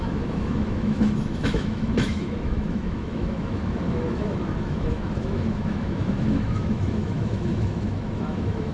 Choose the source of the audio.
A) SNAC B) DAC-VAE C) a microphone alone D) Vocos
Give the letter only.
B